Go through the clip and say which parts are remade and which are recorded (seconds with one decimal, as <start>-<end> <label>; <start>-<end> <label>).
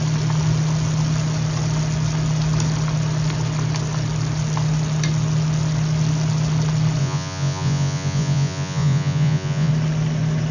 0.0-7.0 recorded; 7.0-9.7 remade; 9.7-10.5 recorded